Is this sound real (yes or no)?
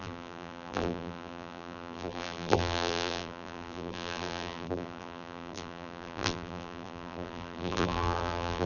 no